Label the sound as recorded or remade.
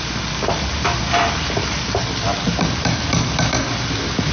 recorded